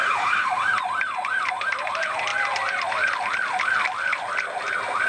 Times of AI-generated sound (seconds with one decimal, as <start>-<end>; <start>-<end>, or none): 0.0-2.3